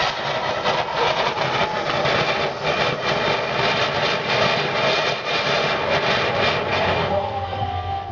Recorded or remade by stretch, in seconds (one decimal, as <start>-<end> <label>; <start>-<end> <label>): 0.0-6.7 recorded; 6.7-8.1 remade

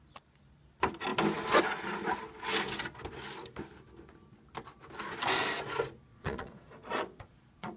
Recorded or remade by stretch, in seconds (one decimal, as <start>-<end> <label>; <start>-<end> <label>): 0.0-6.1 recorded; 6.1-7.8 remade

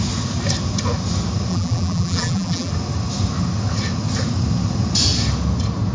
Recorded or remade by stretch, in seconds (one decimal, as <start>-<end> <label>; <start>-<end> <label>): 0.0-1.5 recorded; 1.5-2.7 remade; 2.7-5.9 recorded